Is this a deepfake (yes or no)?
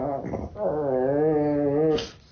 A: no